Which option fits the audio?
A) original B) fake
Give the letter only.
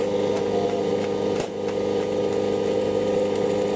A